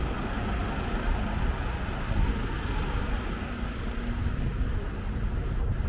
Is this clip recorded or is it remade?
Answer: recorded